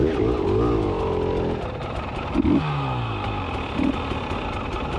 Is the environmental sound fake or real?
real